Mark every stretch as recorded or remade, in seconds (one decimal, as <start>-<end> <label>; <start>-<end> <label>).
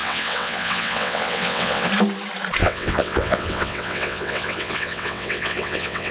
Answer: 0.0-1.9 remade; 1.9-2.6 recorded; 2.6-6.1 remade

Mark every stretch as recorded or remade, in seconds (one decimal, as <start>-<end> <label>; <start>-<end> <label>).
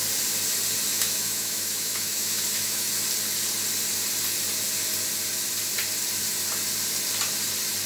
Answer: 0.0-0.9 recorded; 0.9-2.9 remade; 2.9-7.9 recorded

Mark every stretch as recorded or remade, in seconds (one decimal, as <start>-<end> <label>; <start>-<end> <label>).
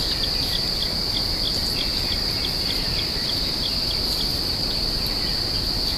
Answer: 0.0-1.9 recorded; 1.9-3.7 remade; 3.7-4.3 recorded; 4.3-4.9 remade; 4.9-6.0 recorded